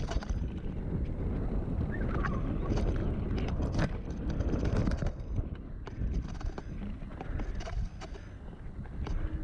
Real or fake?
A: real